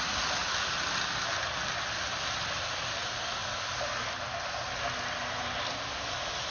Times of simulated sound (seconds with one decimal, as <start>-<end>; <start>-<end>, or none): none